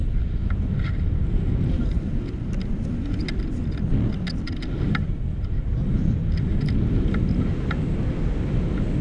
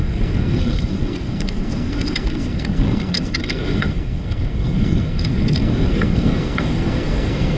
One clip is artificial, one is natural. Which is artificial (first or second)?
second